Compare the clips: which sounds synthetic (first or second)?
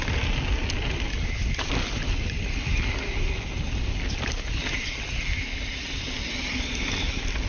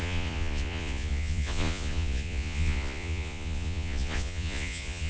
second